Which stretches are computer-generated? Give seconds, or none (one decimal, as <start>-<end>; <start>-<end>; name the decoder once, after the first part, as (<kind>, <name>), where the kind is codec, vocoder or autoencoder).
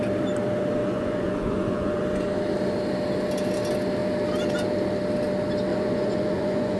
0.8-2.0 (vocoder, Vocos); 5.7-6.8